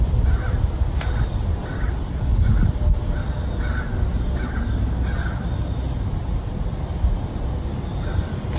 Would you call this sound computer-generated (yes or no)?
no